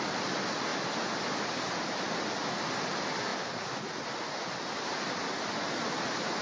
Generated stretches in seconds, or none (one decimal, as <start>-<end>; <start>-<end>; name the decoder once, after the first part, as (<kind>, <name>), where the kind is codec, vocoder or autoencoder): none